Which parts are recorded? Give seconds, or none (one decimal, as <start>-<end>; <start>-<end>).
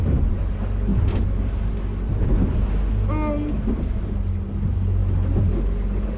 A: 0.0-6.2